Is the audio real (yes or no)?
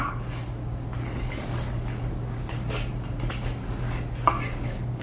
no